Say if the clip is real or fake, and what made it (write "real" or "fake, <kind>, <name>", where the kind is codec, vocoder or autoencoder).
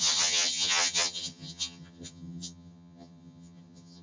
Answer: fake, vocoder, HiFi-GAN